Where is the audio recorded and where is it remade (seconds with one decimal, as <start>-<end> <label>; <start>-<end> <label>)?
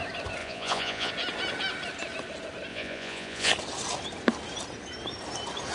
0.0-0.4 recorded; 0.4-1.1 remade; 1.1-2.7 recorded; 2.7-3.5 remade; 3.5-5.7 recorded